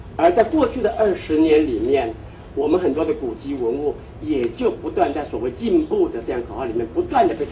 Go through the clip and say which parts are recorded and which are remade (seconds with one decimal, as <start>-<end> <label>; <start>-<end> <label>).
0.0-7.5 recorded